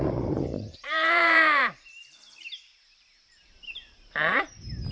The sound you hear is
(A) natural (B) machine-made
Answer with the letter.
B